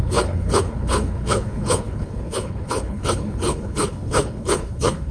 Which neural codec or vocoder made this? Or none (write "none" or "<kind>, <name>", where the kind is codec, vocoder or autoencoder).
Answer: codec, HILCodec